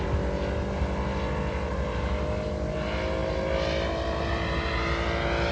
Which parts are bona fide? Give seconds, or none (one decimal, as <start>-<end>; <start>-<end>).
0.0-5.5